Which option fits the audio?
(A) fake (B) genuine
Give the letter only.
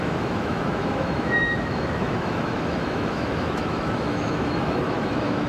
A